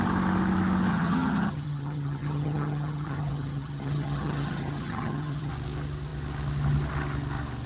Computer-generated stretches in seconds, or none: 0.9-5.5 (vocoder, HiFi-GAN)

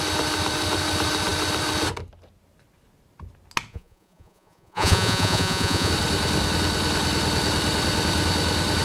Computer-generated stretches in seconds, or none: 3.7-5.9 (vocoder, Vocos)

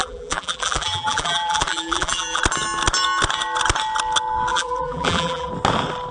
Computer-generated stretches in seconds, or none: 0.0-2.4 (vocoder, BigVGAN v2); 4.5-5.5

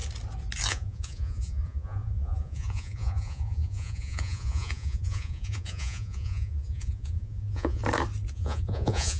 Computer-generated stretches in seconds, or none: 0.7-7.8 (vocoder, Vocos); 8.3-9.2

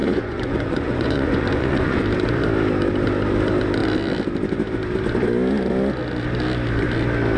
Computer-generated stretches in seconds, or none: 0.0-2.0 (vocoder, Vocos)

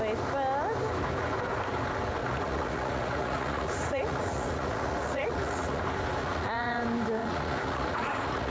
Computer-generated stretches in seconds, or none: 2.2-5.8 (vocoder, Vocos); 6.2-6.8; 7.2-8.5